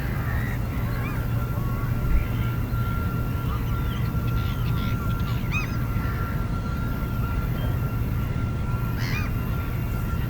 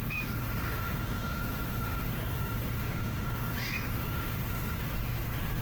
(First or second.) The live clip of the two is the first